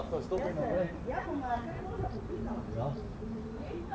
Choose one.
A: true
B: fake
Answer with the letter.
A